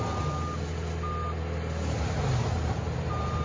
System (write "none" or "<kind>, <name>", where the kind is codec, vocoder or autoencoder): none